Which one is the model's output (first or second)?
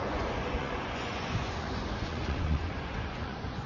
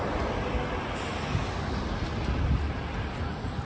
first